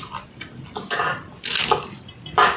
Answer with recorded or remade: recorded